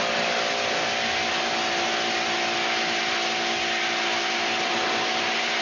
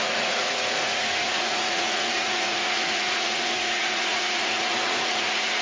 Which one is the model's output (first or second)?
second